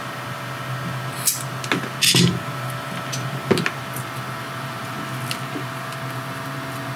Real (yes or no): yes